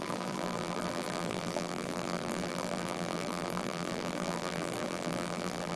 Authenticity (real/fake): fake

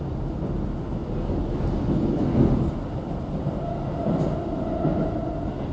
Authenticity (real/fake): real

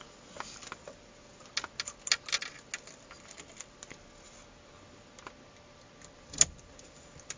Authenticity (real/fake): real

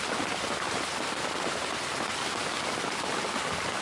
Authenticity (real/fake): real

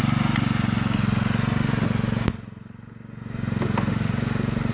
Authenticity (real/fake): real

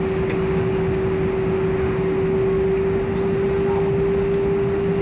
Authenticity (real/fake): real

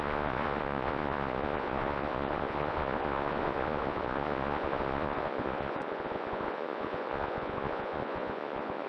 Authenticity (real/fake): fake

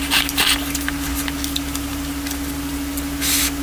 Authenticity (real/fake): real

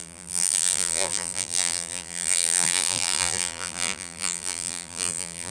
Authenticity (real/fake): fake